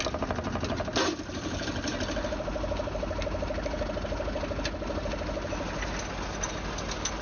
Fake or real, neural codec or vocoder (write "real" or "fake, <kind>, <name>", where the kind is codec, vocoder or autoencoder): real